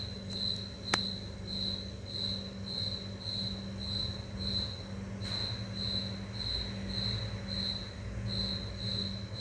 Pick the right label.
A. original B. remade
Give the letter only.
A